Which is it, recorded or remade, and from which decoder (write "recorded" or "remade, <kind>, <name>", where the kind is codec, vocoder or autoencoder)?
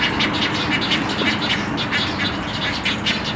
recorded